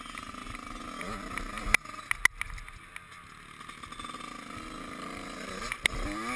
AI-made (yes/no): no